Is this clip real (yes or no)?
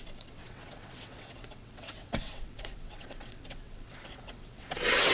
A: no